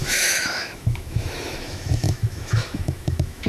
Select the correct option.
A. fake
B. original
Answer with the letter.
A